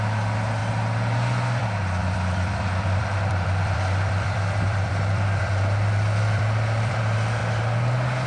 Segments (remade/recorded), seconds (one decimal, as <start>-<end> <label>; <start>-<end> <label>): 0.0-2.0 recorded; 2.0-7.0 remade; 7.0-8.3 recorded